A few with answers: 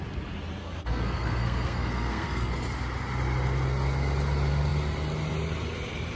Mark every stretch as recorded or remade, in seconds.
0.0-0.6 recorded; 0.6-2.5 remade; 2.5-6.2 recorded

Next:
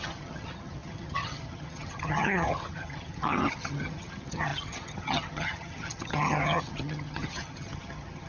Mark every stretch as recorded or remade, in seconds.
0.0-8.3 remade

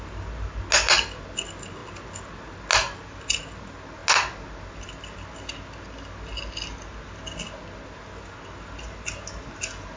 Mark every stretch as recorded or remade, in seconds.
0.0-10.0 recorded

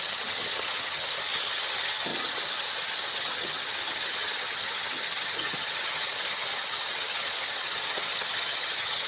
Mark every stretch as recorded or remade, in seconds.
0.0-9.1 remade

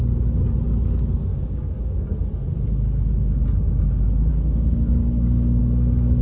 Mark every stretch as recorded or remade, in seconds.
0.0-1.3 recorded; 1.3-2.2 remade; 2.2-4.3 recorded; 4.3-5.6 remade; 5.6-6.2 recorded